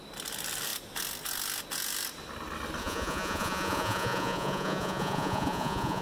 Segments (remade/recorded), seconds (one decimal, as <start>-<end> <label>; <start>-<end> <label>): 0.0-2.8 recorded; 2.8-6.0 remade